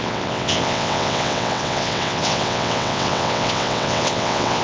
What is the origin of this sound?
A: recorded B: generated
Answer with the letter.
B